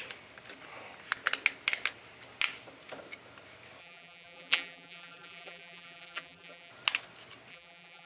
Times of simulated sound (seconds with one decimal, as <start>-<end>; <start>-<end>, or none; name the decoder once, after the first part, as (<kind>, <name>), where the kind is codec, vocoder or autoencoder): 3.8-6.7 (vocoder, BigVGAN v2); 7.5-8.1